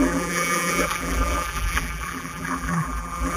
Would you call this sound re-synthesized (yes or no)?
yes